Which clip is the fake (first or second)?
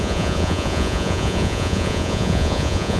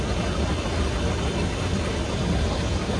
first